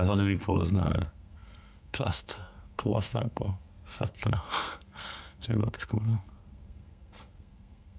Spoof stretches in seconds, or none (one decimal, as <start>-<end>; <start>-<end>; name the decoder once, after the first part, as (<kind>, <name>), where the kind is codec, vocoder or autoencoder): 0.0-8.0 (codec, SNAC)